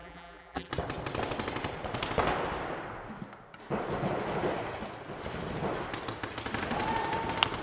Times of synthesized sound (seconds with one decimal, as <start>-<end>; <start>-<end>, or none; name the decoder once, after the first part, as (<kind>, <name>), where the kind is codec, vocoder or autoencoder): 0.0-0.7 (vocoder, BigVGAN v2)